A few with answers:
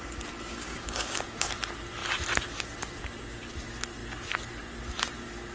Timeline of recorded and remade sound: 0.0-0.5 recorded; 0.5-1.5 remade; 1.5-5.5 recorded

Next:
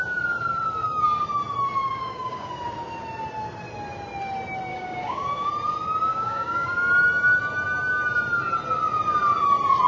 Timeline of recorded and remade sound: 0.0-1.8 recorded; 1.8-2.5 remade; 2.5-4.7 recorded; 4.7-5.5 remade; 5.5-6.1 recorded; 6.1-6.7 remade; 6.7-9.9 recorded

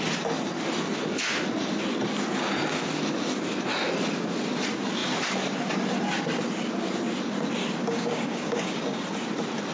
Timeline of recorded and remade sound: 0.0-7.8 recorded; 7.8-9.0 remade; 9.0-9.7 recorded